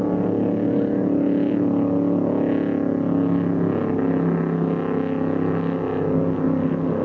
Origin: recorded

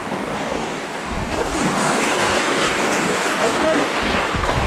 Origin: remade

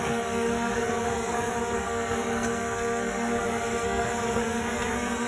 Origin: remade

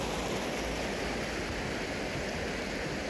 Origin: recorded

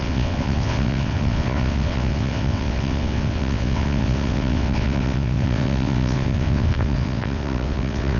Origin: remade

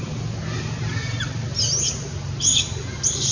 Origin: recorded